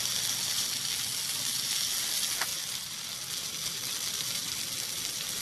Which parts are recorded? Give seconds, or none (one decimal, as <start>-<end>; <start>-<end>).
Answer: 0.0-5.4